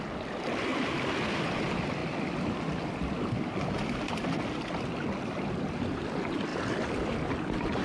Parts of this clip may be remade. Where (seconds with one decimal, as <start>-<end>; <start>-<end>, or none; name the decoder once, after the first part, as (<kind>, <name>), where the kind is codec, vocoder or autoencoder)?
none